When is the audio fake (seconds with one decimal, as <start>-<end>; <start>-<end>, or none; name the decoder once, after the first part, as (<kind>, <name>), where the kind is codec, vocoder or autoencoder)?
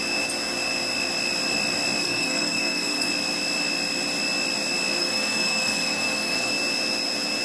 2.0-3.1 (codec, SNAC); 5.0-6.5